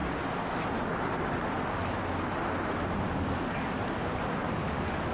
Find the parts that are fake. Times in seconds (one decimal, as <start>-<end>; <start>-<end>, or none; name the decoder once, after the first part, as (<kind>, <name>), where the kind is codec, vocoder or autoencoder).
3.1-3.8 (codec, DAC); 4.4-5.1